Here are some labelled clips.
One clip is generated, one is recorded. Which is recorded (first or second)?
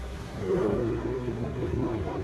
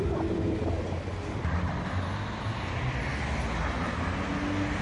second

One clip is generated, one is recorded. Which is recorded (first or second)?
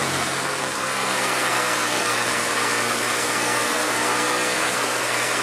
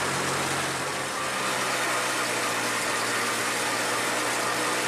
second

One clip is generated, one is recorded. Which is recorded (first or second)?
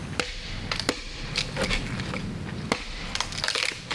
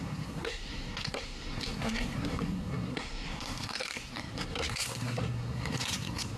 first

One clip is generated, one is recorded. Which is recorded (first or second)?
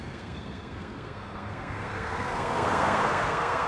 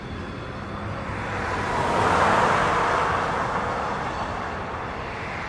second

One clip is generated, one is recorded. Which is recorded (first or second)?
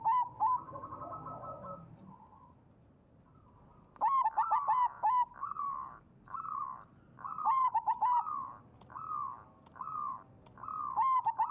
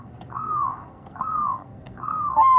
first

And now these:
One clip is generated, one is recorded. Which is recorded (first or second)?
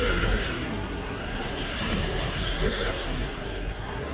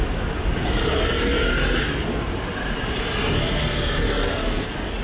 second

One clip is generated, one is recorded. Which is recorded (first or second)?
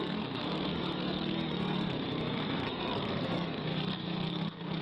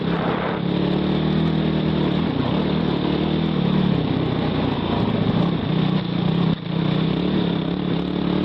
second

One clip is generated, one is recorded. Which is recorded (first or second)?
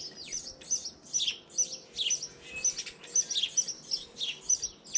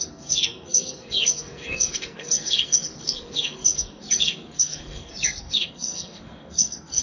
first